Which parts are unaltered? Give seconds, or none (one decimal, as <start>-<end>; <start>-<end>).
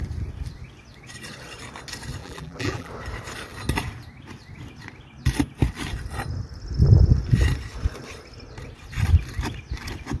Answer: 0.0-2.2; 2.9-10.2